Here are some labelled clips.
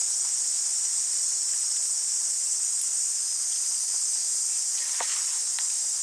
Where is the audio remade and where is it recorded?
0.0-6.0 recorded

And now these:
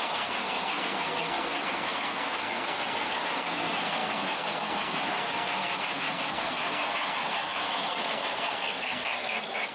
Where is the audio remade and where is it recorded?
0.0-9.7 remade